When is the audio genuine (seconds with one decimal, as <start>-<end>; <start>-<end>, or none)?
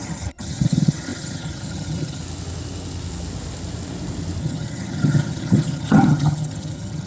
2.2-4.4